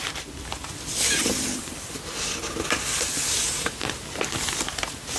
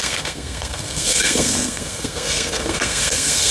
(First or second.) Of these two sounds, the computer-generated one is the second